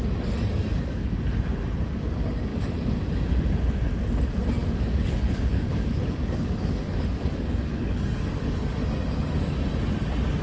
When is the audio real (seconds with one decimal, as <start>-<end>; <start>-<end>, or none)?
0.0-0.7; 1.2-4.6; 8.8-10.4